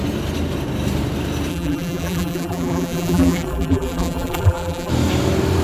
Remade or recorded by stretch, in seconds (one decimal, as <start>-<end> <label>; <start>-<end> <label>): 0.0-1.5 recorded; 1.5-4.9 remade; 4.9-5.6 recorded